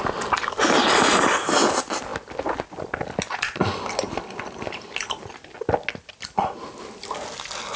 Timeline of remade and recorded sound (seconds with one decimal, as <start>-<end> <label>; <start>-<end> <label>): 0.0-7.8 recorded